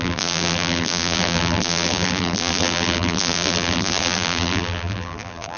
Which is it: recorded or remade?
remade